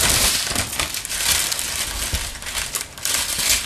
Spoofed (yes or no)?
no